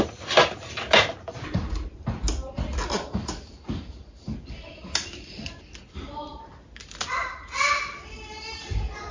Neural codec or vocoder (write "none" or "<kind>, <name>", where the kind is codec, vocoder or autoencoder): none